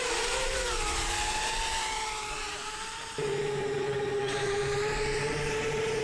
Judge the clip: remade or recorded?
remade